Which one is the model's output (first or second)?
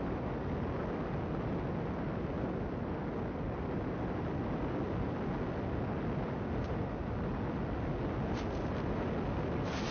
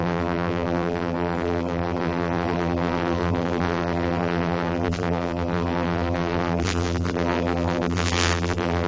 second